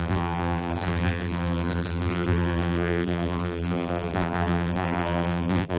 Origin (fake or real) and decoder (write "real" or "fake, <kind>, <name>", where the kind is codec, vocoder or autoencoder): fake, vocoder, BigVGAN v2